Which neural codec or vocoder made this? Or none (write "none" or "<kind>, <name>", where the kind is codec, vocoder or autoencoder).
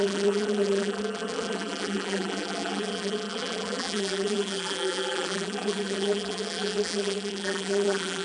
vocoder, BigVGAN v2